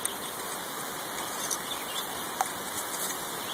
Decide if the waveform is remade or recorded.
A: recorded